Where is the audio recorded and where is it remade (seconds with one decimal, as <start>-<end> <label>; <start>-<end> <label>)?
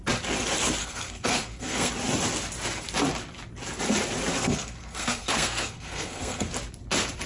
0.0-0.8 recorded; 0.8-1.9 remade; 1.9-4.3 recorded; 4.3-6.5 remade; 6.5-7.3 recorded